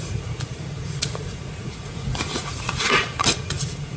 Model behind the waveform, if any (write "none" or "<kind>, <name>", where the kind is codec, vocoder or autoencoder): vocoder, Vocos